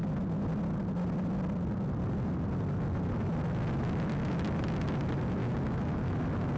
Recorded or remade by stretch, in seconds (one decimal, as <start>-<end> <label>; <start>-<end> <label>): 0.0-5.4 recorded; 5.4-6.0 remade; 6.0-6.6 recorded